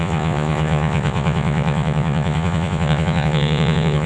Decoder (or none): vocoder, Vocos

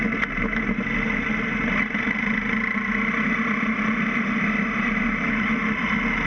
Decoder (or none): none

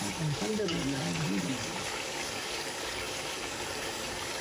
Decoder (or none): codec, DAC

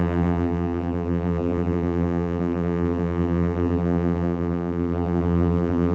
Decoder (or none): vocoder, BigVGAN v2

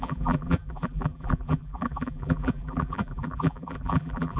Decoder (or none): vocoder, BigVGAN v2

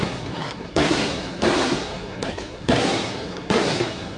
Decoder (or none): codec, SNAC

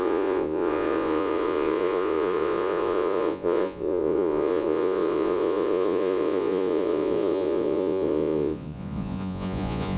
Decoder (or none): vocoder, Vocos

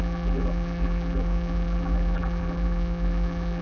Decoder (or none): vocoder, BigVGAN v2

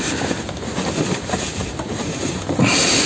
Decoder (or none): none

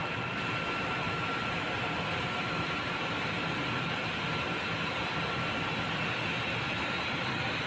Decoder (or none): none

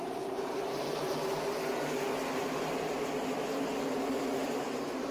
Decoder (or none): vocoder, BigVGAN v2